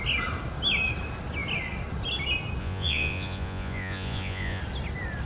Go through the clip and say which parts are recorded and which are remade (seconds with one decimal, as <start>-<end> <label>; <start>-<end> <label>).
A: 0.0-2.6 recorded; 2.6-4.6 remade; 4.6-5.3 recorded